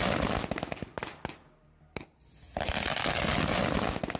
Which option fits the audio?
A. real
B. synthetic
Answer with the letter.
A